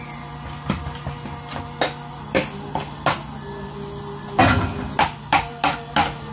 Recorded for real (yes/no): yes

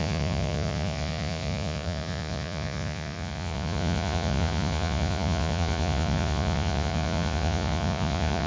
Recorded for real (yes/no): no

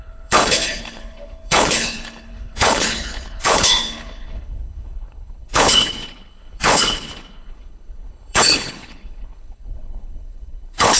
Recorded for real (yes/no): no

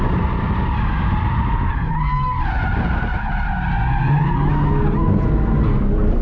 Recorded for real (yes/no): yes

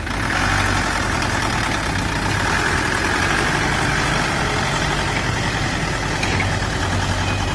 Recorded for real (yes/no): yes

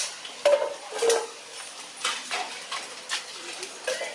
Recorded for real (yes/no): yes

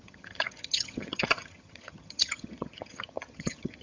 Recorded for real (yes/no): no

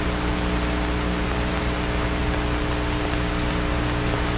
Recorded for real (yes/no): yes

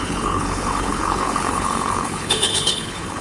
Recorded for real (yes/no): no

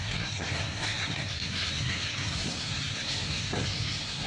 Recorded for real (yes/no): no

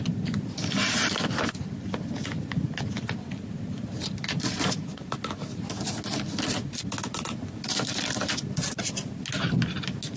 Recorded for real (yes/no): yes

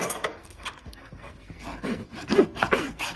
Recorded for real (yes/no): no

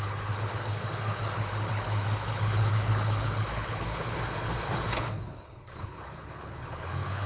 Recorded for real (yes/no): no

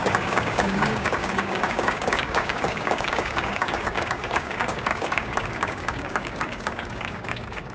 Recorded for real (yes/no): no